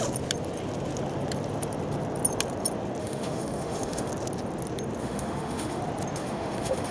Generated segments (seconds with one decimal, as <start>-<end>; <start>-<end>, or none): 3.0-4.1; 5.0-5.8; 6.2-6.9

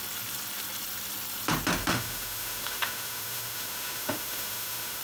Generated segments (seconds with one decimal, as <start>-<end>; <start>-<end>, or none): 1.8-5.0

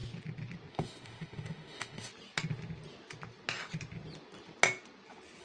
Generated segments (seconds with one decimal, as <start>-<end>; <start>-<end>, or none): 0.7-2.1

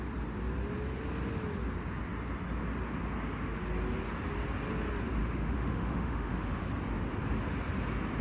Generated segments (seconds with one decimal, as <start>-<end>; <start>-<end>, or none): 5.2-6.7

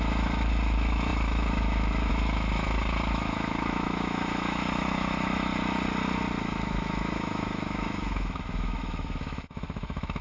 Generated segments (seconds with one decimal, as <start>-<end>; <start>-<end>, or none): 0.0-5.5; 6.4-10.2

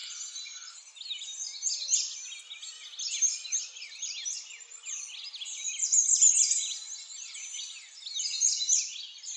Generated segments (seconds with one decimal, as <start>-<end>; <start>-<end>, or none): none

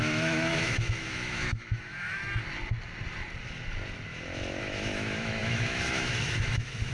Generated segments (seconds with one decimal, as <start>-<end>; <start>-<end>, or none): 0.0-2.2; 4.6-6.9